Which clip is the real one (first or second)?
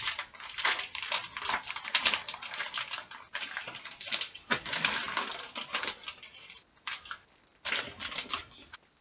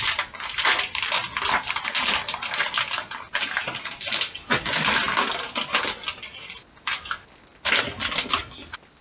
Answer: second